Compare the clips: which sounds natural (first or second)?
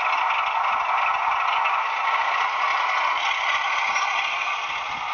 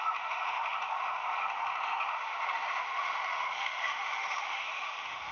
first